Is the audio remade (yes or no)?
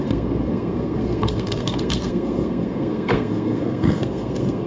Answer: yes